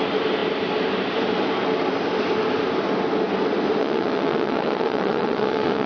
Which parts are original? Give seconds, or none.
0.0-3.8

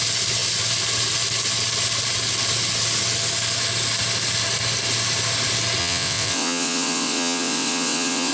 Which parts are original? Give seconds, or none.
0.0-5.8

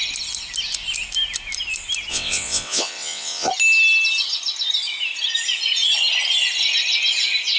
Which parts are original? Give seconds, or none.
0.0-2.1; 3.5-7.6